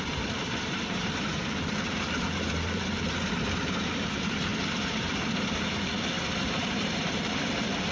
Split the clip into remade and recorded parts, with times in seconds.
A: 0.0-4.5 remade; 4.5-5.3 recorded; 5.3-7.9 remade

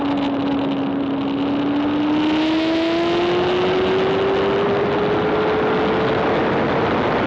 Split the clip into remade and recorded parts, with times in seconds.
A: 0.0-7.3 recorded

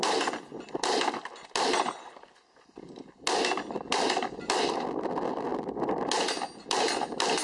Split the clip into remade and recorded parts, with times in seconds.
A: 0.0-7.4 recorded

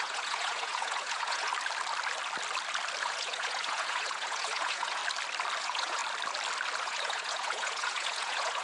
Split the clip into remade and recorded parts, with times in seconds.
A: 0.0-1.5 remade; 1.5-3.0 recorded; 3.0-5.0 remade; 5.0-5.6 recorded; 5.6-6.0 remade; 6.0-6.8 recorded; 6.8-8.6 remade